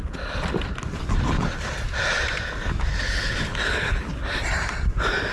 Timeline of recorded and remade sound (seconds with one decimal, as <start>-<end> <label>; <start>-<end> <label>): 0.0-2.9 recorded; 2.9-4.1 remade; 4.1-5.3 recorded